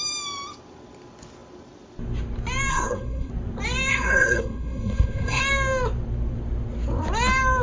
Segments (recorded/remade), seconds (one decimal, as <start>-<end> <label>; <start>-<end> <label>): 0.0-2.7 recorded; 2.7-3.3 remade; 3.3-3.9 recorded; 3.9-5.4 remade; 5.4-7.6 recorded